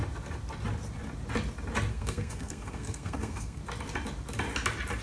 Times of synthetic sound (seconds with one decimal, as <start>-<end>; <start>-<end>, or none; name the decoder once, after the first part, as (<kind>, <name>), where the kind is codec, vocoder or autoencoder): 1.9-3.6 (codec, SNAC)